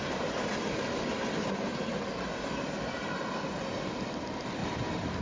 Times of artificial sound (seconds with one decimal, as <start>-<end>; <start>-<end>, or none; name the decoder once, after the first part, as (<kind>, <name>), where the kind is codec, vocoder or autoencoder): 4.6-5.2 (vocoder, BigVGAN v2)